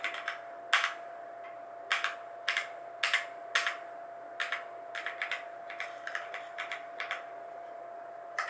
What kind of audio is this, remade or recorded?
recorded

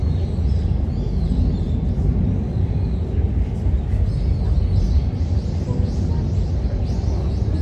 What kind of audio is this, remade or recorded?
recorded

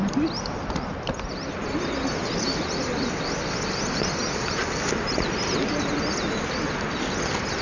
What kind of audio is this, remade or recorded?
recorded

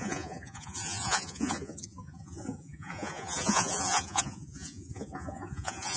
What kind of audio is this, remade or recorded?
remade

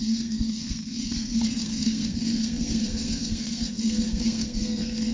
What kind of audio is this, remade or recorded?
remade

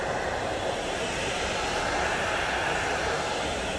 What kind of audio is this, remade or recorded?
recorded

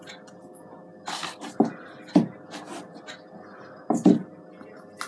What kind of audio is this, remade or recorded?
recorded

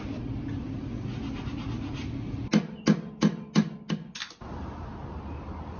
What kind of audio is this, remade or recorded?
recorded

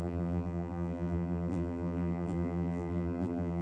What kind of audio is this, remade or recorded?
remade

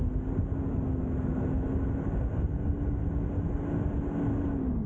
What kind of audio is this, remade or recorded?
recorded